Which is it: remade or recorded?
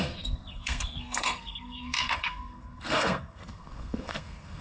remade